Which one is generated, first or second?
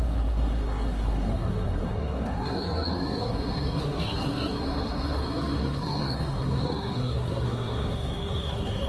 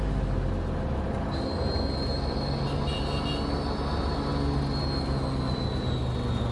first